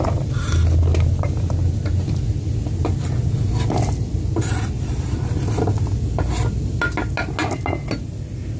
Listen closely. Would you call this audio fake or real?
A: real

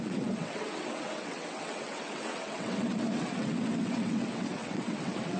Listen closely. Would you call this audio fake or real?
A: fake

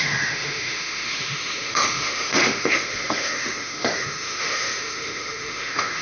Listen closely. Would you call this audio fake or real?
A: fake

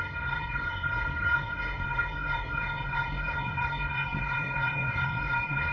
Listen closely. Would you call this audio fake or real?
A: fake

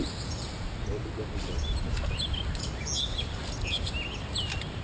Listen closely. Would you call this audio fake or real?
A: real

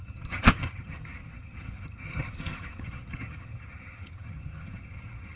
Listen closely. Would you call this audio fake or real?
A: fake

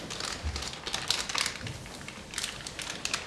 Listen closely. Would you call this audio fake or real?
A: real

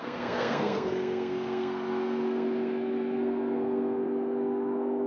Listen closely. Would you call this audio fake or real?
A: fake